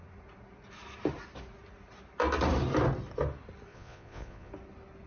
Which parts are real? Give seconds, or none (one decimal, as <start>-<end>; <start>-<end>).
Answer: 0.0-3.7; 4.5-5.1